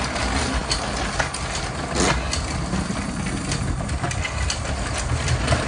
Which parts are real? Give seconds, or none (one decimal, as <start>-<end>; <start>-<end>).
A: 0.0-5.7